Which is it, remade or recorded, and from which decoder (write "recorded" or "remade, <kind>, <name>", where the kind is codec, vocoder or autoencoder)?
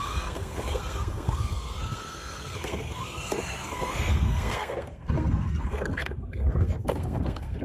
remade, codec, SNAC